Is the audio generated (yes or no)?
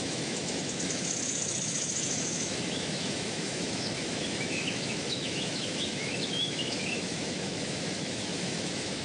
yes